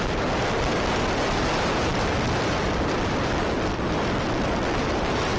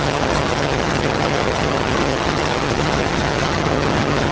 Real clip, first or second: first